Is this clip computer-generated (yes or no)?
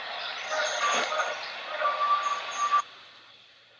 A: no